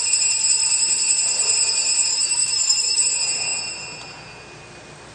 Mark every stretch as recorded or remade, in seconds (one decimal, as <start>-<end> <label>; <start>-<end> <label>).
0.0-2.1 recorded; 2.1-3.0 remade; 3.0-5.1 recorded